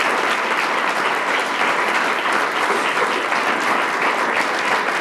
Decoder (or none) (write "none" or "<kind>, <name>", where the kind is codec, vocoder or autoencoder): none